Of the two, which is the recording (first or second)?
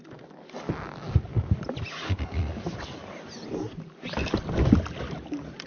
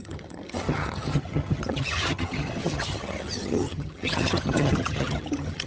first